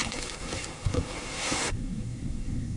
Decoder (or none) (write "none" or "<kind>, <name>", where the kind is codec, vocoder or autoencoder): codec, SNAC